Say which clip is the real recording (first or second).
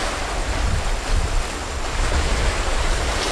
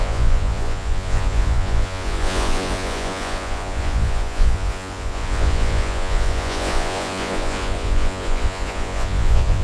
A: first